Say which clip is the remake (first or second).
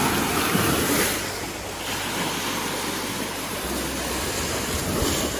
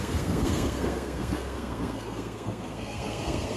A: second